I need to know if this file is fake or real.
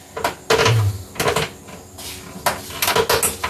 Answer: real